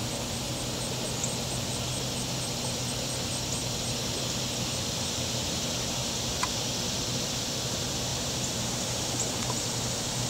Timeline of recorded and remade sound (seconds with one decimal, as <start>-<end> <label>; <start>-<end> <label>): 0.0-8.1 recorded; 8.1-10.3 remade